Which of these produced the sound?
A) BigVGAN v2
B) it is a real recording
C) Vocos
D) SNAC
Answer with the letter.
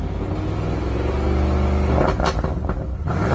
B